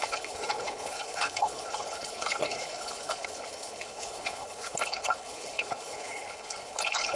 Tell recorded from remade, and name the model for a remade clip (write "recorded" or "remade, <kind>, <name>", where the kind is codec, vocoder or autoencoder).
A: remade, codec, HILCodec